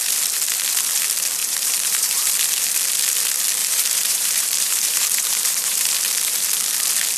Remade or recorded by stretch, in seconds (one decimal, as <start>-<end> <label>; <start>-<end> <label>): 0.0-1.4 recorded; 1.4-2.3 remade; 2.3-3.6 recorded; 3.6-5.9 remade; 5.9-7.2 recorded